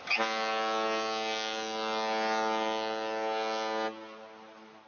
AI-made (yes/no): no